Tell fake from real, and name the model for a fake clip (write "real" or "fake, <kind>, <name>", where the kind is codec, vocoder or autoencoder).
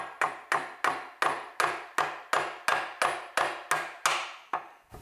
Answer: real